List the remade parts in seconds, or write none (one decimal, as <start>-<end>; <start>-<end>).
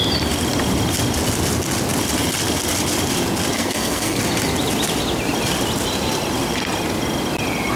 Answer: 3.5-4.2